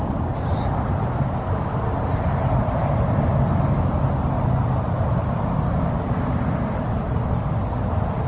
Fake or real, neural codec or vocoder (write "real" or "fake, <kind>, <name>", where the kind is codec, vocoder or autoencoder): real